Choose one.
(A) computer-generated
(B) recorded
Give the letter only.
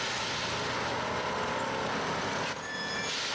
B